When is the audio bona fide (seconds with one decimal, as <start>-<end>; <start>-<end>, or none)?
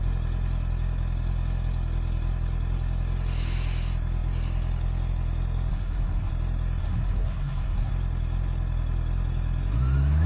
0.0-5.7; 6.3-6.8; 7.9-10.3